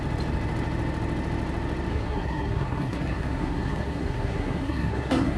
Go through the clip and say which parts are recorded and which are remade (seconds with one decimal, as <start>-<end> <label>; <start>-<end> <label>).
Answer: 0.0-1.9 recorded; 1.9-5.4 remade